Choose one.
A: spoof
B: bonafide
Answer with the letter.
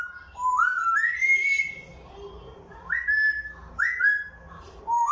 B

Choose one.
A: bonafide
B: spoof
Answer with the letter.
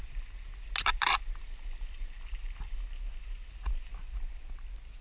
A